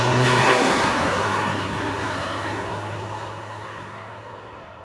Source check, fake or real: fake